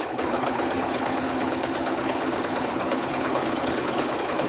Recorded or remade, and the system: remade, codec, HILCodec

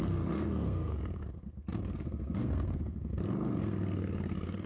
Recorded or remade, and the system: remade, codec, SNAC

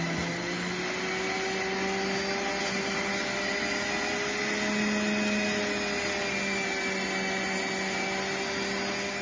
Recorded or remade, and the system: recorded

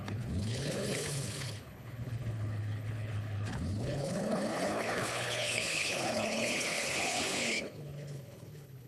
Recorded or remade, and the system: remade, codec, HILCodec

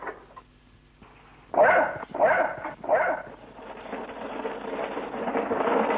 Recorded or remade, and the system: recorded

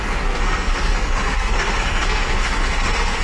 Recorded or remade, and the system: remade, codec, SNAC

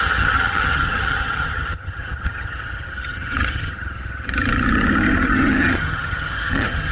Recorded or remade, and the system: remade, vocoder, HiFi-GAN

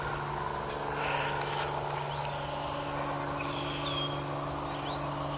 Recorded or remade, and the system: recorded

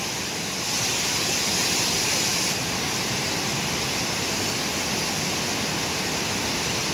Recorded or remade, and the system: recorded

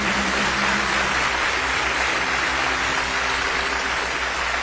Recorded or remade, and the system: recorded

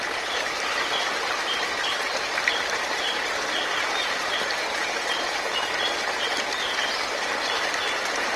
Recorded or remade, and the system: remade, vocoder, BigVGAN v2